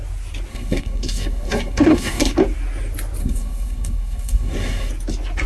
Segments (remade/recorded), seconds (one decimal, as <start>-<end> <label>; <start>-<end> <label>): 0.0-0.5 recorded; 0.5-2.3 remade; 2.3-3.2 recorded; 3.2-4.9 remade; 4.9-5.5 recorded

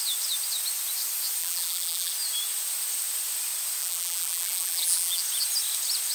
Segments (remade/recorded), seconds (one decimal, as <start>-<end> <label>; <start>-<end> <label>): 0.0-1.4 recorded; 1.4-2.1 remade; 2.1-3.8 recorded; 3.8-5.2 remade; 5.2-6.1 recorded

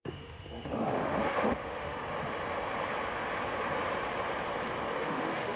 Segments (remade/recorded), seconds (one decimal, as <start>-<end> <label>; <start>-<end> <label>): 0.0-2.0 remade; 2.0-4.9 recorded; 4.9-5.6 remade